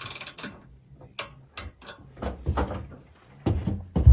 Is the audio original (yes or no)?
yes